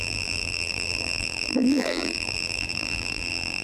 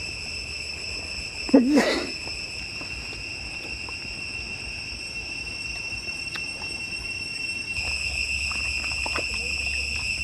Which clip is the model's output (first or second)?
first